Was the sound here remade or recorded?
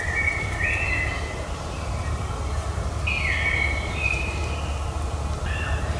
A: recorded